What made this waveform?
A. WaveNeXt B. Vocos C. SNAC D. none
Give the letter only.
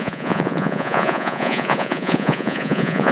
B